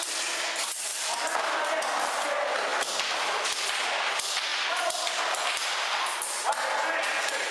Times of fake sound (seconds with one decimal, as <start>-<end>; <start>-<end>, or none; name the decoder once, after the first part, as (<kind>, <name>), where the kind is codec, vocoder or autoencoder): 0.9-1.8 (vocoder, BigVGAN v2); 2.7-3.8; 4.5-6.2